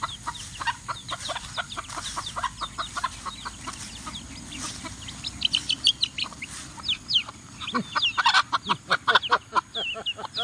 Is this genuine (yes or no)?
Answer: yes